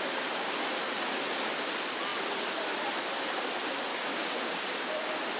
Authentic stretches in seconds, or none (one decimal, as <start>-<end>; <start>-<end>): 0.0-3.9; 4.9-5.4